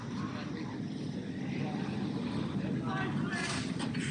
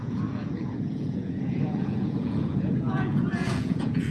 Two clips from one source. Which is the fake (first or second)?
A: second